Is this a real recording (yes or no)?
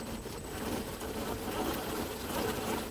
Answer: yes